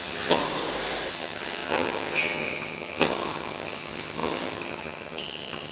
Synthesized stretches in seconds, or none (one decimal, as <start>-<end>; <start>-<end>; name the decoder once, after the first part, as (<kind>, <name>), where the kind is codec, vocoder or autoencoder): 0.0-0.4 (vocoder, HiFi-GAN); 1.1-5.7